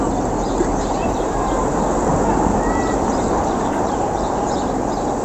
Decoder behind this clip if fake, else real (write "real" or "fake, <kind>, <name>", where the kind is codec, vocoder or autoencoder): real